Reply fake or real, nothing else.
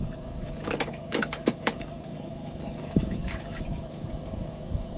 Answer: fake